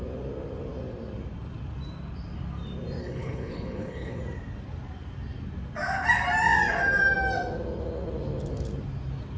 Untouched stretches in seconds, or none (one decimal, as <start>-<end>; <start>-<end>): 0.0-3.0; 4.2-9.4